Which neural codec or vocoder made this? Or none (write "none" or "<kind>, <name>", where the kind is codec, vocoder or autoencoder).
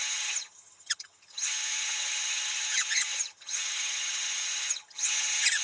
vocoder, HiFi-GAN